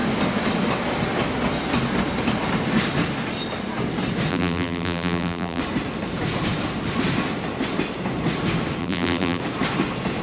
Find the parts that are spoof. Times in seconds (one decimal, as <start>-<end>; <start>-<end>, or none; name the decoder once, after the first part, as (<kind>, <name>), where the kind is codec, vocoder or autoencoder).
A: 4.3-5.6 (vocoder, BigVGAN v2); 8.8-9.4